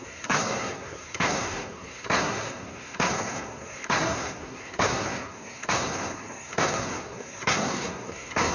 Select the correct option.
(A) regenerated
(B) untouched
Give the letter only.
A